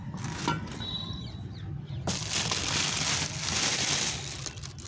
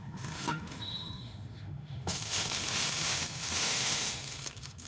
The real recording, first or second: first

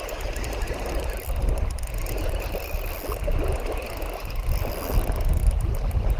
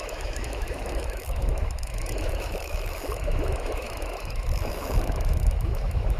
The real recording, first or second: first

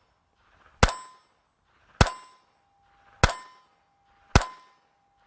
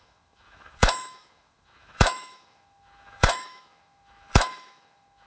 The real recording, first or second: first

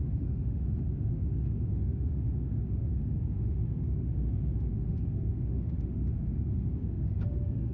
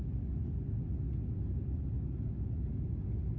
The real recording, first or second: second